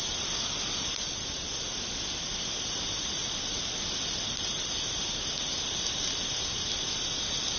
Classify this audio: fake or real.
real